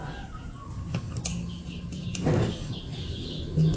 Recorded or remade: recorded